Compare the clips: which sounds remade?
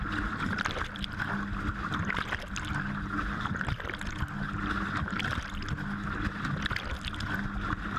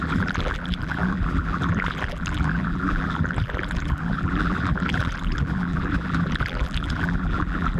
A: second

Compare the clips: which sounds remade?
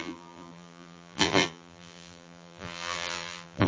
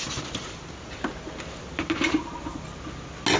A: first